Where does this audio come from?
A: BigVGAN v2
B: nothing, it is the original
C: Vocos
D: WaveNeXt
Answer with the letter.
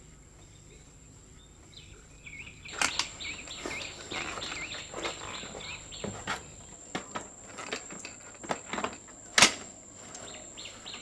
B